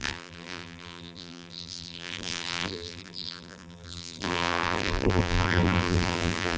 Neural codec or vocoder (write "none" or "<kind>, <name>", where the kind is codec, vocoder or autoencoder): vocoder, BigVGAN v2